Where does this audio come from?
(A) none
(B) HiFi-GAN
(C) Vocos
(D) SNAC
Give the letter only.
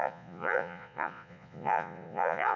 C